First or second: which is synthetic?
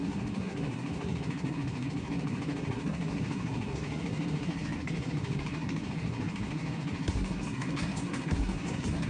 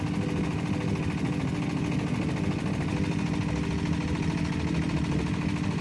first